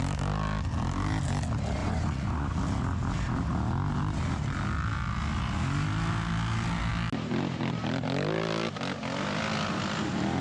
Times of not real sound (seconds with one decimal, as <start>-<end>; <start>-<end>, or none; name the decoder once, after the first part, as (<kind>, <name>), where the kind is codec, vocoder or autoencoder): 1.8-2.6 (vocoder, Vocos)